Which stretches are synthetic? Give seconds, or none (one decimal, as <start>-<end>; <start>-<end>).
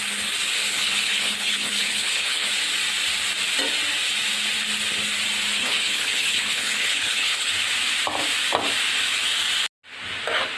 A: 0.7-2.5; 5.6-7.5